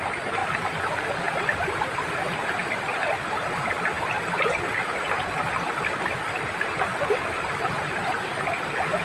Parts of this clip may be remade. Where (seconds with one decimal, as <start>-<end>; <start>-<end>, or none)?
none